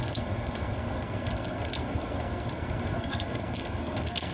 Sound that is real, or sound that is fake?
fake